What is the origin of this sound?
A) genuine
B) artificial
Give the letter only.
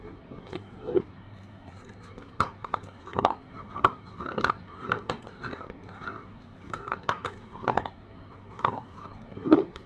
B